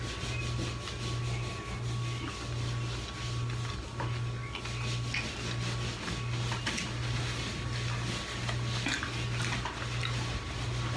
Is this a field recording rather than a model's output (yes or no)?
yes